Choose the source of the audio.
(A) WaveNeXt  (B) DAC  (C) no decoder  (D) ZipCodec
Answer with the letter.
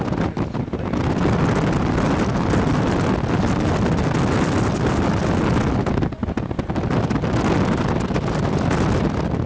C